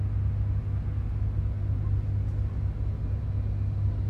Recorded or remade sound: recorded